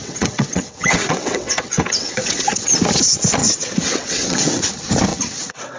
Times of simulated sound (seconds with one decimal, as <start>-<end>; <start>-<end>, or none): 0.0-2.7; 3.4-4.6; 5.1-5.8